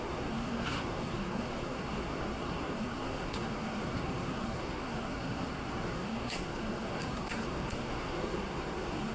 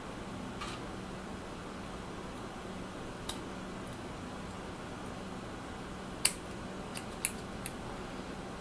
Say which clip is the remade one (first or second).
first